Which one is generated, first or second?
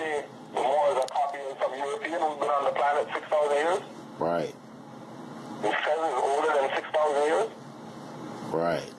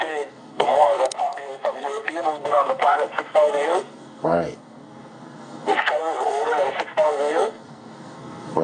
second